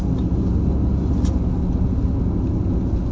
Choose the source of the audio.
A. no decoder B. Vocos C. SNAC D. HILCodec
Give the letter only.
A